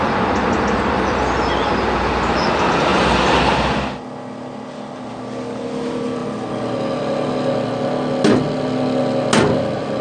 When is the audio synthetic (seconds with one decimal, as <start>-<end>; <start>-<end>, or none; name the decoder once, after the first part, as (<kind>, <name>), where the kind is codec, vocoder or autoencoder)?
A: none